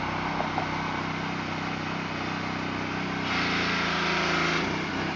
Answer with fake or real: real